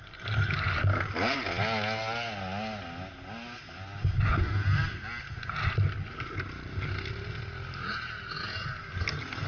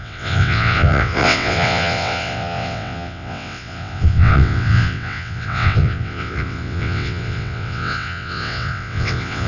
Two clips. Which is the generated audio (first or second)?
second